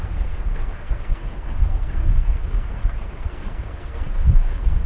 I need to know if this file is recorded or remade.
remade